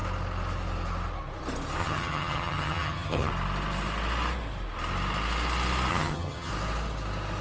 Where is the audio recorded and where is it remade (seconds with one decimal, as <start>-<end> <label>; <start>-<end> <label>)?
0.0-1.8 recorded; 1.8-3.3 remade; 3.3-5.9 recorded; 5.9-6.5 remade; 6.5-7.4 recorded